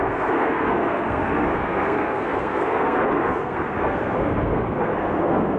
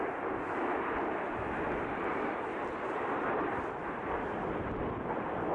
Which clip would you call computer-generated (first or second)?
first